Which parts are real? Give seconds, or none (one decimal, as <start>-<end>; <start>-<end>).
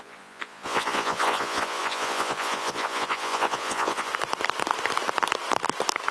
4.1-6.1